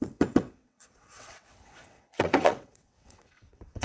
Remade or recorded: remade